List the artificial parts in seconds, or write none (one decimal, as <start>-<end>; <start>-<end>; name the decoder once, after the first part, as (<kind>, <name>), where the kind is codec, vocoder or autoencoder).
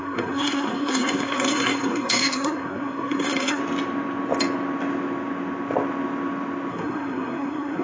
0.0-3.6 (codec, SNAC); 6.7-7.8